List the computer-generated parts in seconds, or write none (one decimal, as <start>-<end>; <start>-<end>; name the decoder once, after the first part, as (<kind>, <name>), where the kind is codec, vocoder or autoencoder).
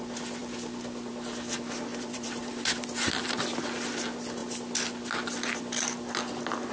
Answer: 1.9-3.6 (vocoder, BigVGAN v2)